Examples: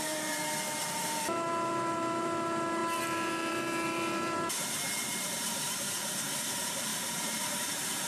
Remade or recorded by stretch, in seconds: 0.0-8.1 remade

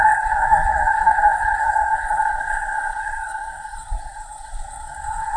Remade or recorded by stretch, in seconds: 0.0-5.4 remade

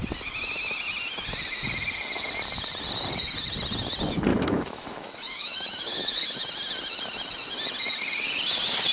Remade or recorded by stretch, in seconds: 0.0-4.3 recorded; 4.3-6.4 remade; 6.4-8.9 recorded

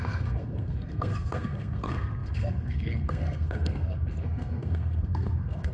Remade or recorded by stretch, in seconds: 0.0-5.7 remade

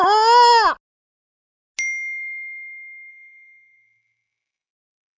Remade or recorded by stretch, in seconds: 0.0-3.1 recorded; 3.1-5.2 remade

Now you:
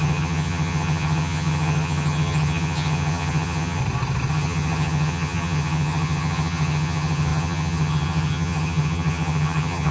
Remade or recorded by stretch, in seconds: 0.0-3.8 remade; 3.8-4.3 recorded; 4.3-9.9 remade

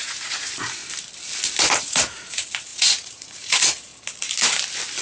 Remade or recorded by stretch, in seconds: 0.0-0.8 remade; 0.8-1.8 recorded; 1.8-3.9 remade; 3.9-5.0 recorded